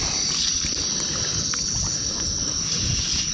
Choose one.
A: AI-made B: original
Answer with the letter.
B